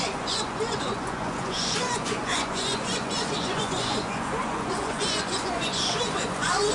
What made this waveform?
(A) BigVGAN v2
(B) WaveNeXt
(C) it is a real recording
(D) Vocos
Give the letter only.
D